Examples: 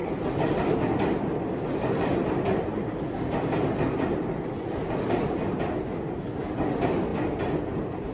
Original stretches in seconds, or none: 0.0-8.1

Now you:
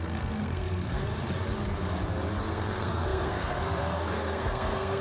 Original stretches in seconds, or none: 1.0-2.5

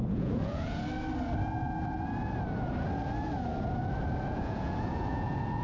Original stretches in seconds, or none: 0.8-4.2

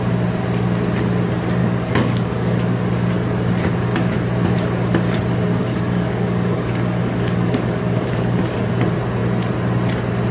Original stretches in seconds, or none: 0.0-1.6; 2.8-5.6; 8.7-10.3

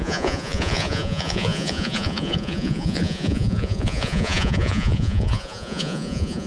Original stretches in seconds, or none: none

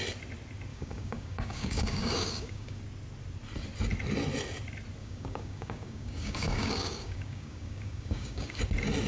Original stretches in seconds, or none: 0.0-0.7; 2.8-5.0; 8.6-9.1